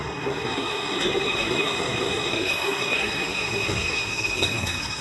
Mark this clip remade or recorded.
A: remade